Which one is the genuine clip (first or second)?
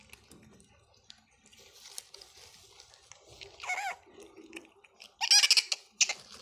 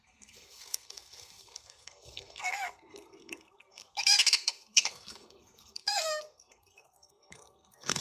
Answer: first